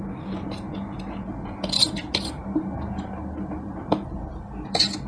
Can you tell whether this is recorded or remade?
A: recorded